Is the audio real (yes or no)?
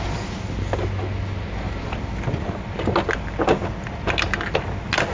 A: yes